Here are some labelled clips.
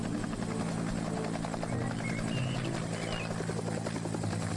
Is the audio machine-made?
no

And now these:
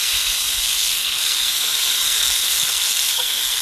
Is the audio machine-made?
yes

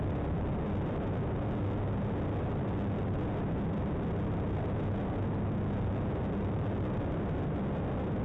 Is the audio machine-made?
no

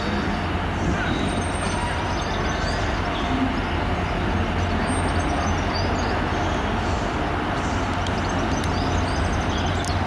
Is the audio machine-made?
no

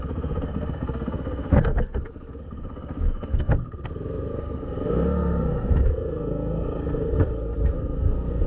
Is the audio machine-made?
yes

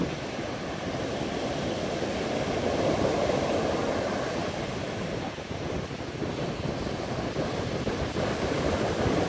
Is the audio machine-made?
no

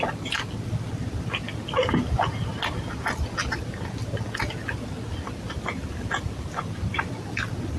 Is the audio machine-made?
no